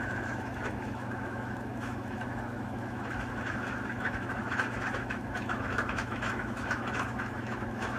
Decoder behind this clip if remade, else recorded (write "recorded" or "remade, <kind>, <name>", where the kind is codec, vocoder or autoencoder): remade, autoencoder, DAC-VAE